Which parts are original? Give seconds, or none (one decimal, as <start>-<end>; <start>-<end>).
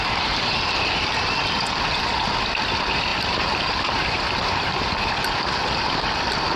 0.0-3.1; 5.1-6.6